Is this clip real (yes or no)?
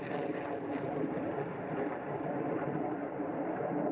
no